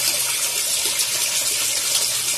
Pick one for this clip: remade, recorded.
recorded